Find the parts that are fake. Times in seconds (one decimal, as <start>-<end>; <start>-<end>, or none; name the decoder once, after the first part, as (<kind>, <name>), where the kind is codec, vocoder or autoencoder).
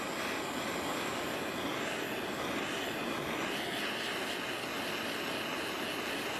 none